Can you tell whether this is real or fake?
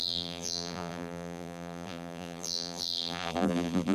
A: fake